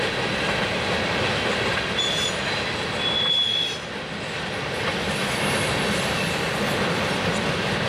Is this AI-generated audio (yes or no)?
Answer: no